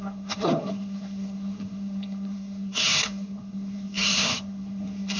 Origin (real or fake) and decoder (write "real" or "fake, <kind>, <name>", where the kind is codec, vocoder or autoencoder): fake, codec, SNAC